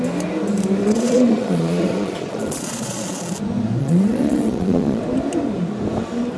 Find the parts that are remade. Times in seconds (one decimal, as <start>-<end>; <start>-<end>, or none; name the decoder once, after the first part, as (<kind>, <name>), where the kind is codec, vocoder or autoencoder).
0.8-3.3 (vocoder, Vocos); 3.8-5.0